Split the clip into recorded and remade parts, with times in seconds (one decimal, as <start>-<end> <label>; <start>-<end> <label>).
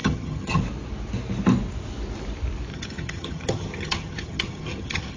0.0-0.6 remade; 0.6-2.7 recorded; 2.7-5.2 remade